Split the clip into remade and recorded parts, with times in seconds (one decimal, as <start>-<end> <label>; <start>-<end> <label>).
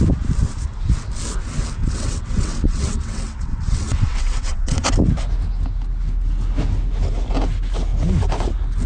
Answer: 0.0-1.8 recorded; 1.8-4.9 remade; 4.9-8.9 recorded